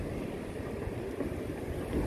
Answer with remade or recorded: recorded